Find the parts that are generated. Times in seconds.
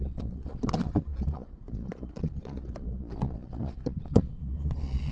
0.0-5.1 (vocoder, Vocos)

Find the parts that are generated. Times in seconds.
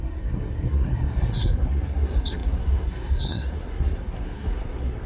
0.0-5.1 (codec, SNAC)